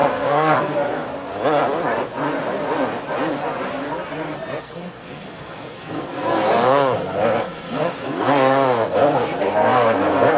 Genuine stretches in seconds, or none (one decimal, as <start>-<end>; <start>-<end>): 1.3-4.6

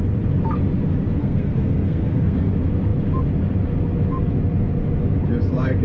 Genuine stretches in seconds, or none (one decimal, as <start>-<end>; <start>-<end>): 0.0-1.2; 2.5-5.8

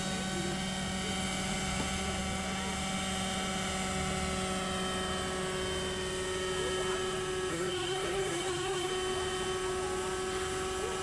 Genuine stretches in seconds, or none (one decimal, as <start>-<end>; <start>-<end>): 0.0-7.5; 8.9-11.0

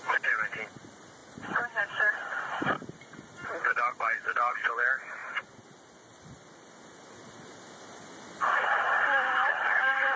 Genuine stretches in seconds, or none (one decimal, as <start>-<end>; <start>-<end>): 0.0-1.2; 2.4-10.2

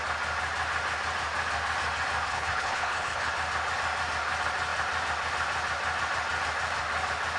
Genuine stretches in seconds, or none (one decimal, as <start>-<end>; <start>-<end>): 0.0-2.3; 3.3-7.4